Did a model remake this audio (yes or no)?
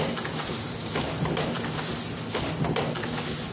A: no